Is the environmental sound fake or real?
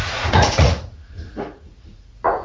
fake